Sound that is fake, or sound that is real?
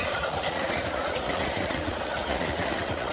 fake